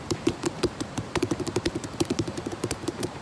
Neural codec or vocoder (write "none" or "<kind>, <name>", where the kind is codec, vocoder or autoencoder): vocoder, BigVGAN v2